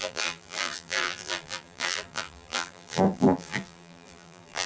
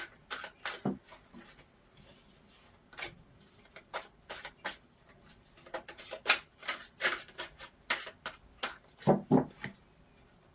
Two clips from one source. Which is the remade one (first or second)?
first